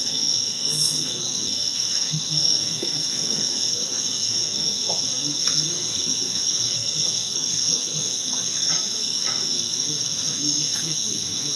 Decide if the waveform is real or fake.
fake